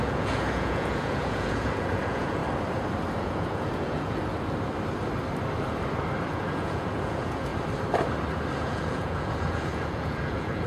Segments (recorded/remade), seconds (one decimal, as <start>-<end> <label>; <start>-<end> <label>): 0.0-2.4 remade; 2.4-3.2 recorded; 3.2-4.2 remade; 4.2-6.3 recorded; 6.3-7.5 remade; 7.5-8.6 recorded; 8.6-10.7 remade